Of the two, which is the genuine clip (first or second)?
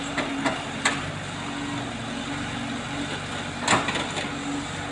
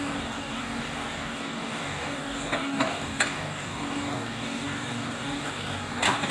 first